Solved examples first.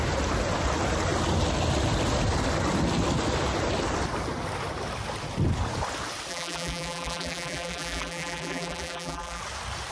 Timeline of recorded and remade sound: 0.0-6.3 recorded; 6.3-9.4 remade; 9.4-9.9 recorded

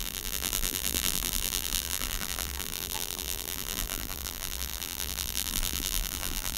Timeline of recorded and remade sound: 0.0-6.6 remade

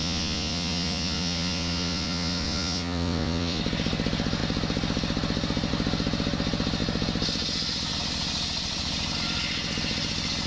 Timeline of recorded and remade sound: 0.0-3.6 remade; 3.6-10.5 recorded

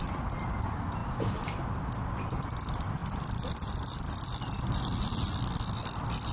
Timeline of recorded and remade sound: 0.0-6.3 recorded

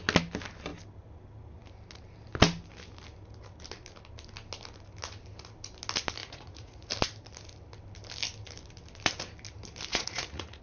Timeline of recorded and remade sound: 0.0-6.2 recorded; 6.2-6.9 remade; 6.9-9.9 recorded; 9.9-10.6 remade